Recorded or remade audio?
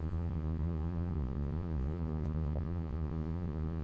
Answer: remade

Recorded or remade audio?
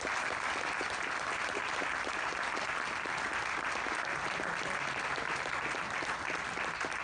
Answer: recorded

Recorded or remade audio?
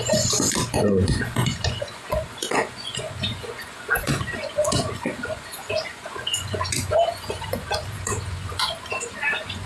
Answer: remade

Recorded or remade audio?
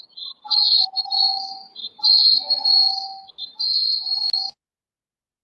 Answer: recorded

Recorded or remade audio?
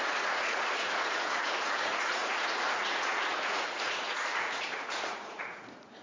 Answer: remade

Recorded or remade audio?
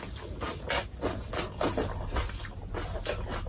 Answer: recorded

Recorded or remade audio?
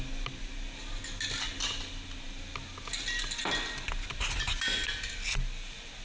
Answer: recorded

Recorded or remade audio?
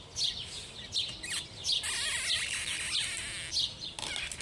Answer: recorded